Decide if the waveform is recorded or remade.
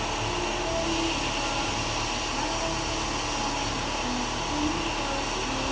recorded